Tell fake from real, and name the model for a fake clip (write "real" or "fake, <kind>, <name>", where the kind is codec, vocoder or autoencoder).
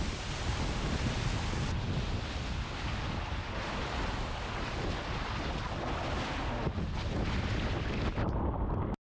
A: real